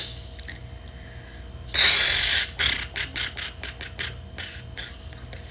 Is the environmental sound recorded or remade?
recorded